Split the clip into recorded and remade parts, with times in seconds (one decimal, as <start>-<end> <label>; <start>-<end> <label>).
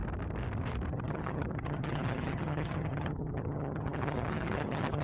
0.0-0.9 recorded; 0.9-5.0 remade